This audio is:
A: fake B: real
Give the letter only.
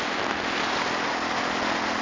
B